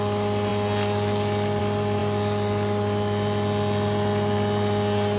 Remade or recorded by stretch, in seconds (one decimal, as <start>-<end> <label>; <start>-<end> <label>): 0.0-5.2 recorded